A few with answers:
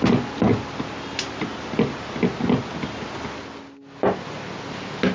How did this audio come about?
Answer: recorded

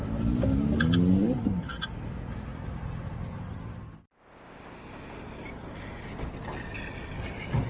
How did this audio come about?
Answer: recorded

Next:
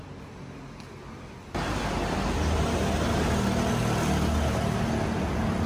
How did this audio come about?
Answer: recorded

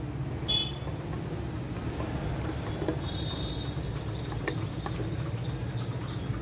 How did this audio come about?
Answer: recorded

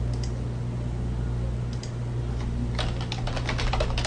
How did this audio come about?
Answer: recorded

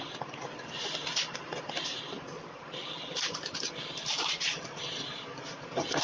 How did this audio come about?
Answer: recorded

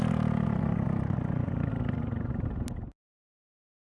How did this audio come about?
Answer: recorded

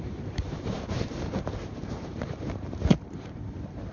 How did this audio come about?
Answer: remade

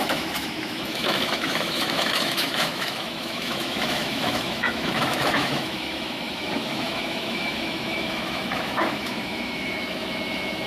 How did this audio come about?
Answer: remade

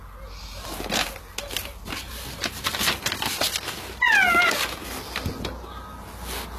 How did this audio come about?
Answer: recorded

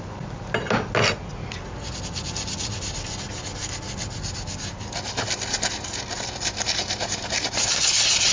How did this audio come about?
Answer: recorded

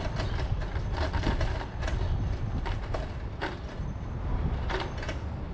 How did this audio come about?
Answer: recorded